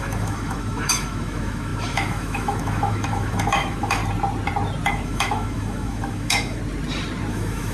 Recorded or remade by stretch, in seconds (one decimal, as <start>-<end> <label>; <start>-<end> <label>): 0.0-4.0 remade; 4.0-4.9 recorded; 4.9-6.6 remade; 6.6-7.3 recorded; 7.3-7.7 remade